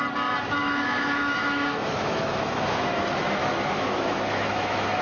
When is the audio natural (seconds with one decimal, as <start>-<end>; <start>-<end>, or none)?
0.0-0.6; 3.0-3.4